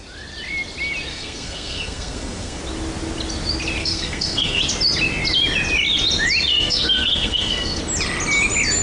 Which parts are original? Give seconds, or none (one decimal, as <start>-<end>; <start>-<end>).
0.0-1.1; 2.6-3.8; 4.6-6.5; 7.8-8.8